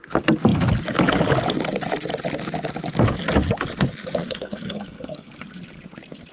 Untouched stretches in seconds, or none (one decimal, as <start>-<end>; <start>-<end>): 0.0-4.2; 5.3-6.3